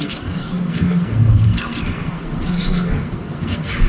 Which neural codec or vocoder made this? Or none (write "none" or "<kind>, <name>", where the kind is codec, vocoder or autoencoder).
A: codec, SNAC